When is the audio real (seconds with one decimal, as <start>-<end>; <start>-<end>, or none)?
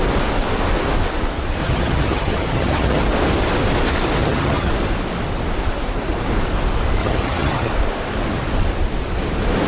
0.0-1.6; 3.0-4.2; 4.7-7.0; 7.7-9.7